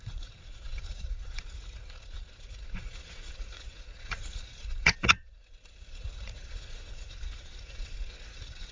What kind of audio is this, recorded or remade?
remade